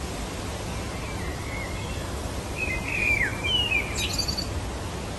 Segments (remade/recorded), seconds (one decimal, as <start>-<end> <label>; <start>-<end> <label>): 0.0-1.3 recorded; 1.3-2.3 remade; 2.3-2.9 recorded; 2.9-3.7 remade; 3.7-5.2 recorded